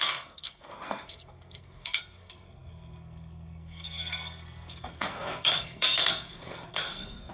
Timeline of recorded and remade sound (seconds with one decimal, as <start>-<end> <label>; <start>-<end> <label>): 0.0-7.3 remade